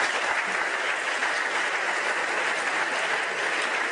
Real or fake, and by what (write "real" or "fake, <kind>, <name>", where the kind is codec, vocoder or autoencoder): real